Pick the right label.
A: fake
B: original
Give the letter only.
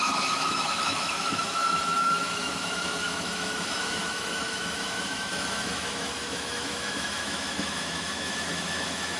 A